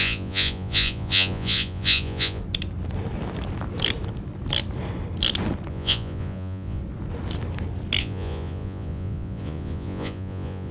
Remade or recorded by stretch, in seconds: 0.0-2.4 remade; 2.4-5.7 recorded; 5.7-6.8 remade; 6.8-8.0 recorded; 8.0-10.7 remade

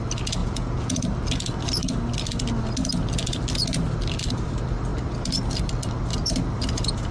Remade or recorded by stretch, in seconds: 0.0-0.4 recorded; 0.4-1.0 remade; 1.0-7.1 recorded